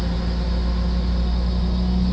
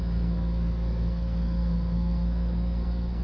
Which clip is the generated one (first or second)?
second